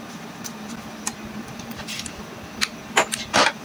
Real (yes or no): yes